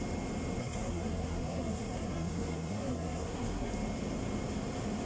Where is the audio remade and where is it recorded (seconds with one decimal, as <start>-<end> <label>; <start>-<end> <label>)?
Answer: 0.0-0.6 recorded; 0.6-3.7 remade; 3.7-5.1 recorded